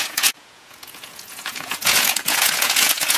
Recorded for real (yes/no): no